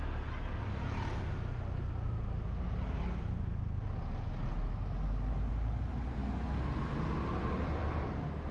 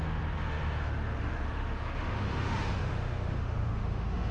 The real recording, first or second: first